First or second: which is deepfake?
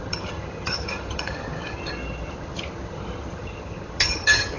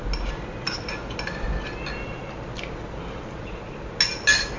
first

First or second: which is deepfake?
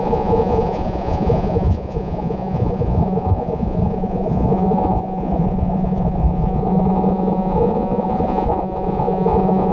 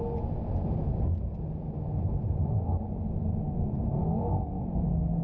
first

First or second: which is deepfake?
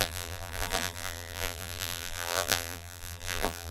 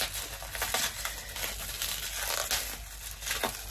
first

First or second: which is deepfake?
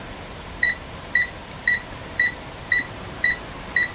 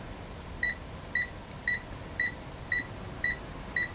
first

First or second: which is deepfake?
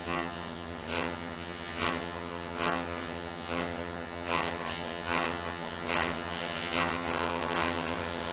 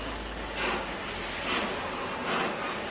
first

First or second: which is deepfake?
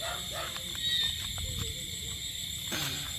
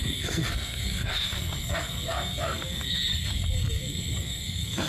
second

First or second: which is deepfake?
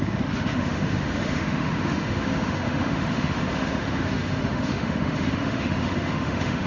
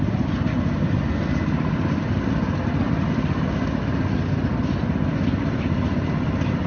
first